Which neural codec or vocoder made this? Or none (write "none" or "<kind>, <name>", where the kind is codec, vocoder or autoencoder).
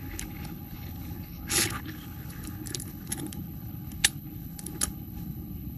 codec, HILCodec